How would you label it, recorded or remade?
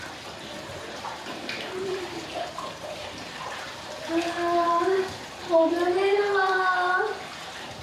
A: remade